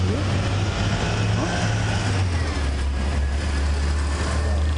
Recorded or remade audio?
recorded